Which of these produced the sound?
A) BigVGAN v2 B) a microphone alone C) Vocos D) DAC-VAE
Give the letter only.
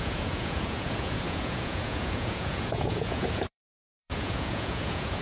C